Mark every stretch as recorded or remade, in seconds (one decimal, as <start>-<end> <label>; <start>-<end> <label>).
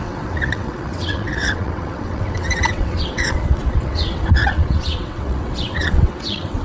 0.0-6.6 remade